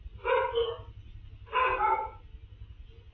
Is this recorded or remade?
recorded